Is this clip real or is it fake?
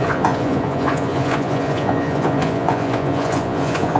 fake